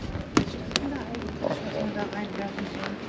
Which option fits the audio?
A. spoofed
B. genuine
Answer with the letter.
B